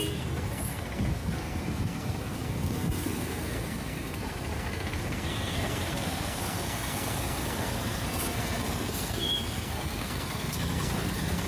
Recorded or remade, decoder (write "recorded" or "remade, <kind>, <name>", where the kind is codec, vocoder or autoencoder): remade, codec, SNAC